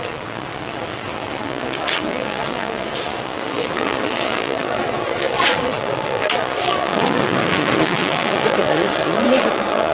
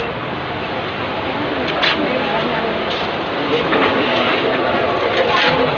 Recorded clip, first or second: second